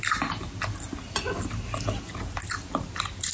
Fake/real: real